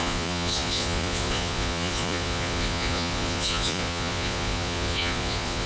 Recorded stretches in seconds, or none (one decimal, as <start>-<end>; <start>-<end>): none